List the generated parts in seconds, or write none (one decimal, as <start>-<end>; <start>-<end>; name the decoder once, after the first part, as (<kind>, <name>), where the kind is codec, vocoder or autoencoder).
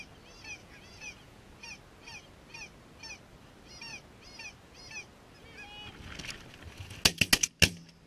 0.6-1.5 (vocoder, Vocos)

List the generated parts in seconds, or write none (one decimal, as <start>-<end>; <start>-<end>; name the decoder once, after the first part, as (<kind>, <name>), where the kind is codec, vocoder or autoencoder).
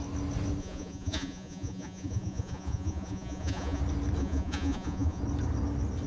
0.6-3.8 (vocoder, Vocos); 4.2-5.2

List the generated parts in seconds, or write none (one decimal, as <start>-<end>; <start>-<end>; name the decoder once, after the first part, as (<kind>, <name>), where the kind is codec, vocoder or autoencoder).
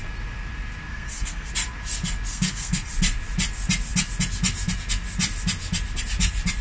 0.9-1.5 (codec, SNAC); 2.3-2.9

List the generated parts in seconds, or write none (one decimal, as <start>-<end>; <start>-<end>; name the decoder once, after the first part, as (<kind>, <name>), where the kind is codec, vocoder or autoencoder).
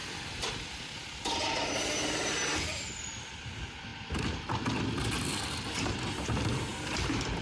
none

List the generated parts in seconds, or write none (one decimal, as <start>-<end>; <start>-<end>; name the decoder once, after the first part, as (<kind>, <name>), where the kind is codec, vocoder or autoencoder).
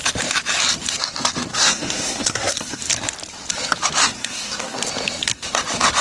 1.5-2.8 (codec, SNAC); 4.0-4.8